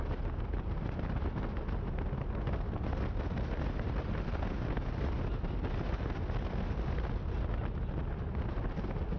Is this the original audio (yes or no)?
yes